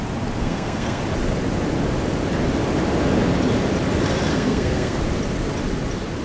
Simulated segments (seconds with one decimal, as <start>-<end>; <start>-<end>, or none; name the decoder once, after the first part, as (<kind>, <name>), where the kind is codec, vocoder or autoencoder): 0.4-1.0 (codec, SNAC); 4.3-5.0